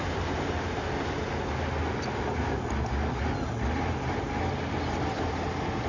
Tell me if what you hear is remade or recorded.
recorded